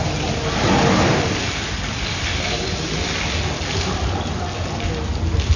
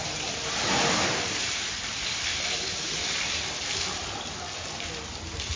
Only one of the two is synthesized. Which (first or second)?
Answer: second